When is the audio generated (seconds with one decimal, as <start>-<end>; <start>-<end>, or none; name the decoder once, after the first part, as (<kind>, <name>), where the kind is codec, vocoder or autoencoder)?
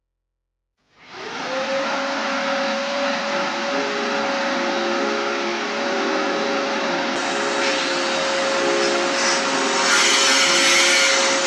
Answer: none